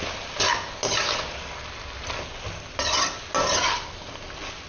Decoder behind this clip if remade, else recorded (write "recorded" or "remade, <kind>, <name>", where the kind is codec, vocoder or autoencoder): recorded